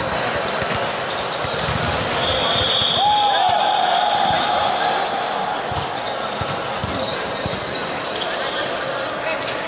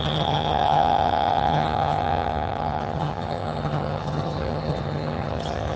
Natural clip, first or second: first